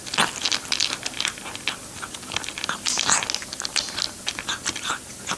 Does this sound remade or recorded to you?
recorded